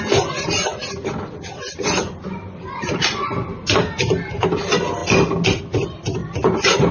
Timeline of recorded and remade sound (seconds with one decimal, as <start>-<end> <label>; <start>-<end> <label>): 0.0-6.2 recorded; 6.2-6.9 remade